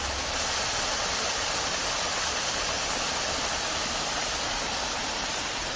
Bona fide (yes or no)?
yes